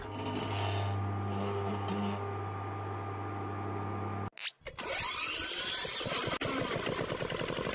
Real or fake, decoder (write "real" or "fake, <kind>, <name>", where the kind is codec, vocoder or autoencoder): real